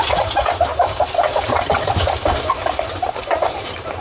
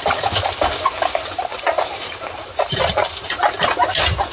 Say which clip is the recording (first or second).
second